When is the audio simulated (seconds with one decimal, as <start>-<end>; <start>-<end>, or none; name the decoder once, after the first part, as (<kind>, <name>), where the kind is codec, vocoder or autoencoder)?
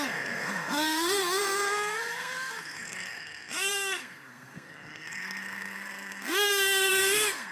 0.0-7.5 (codec, SNAC)